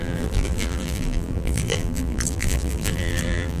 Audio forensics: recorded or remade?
remade